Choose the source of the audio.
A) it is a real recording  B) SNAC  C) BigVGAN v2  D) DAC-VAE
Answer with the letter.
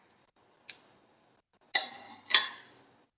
A